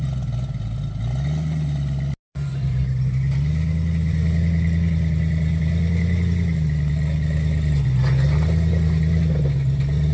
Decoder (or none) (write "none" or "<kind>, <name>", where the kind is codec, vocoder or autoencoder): none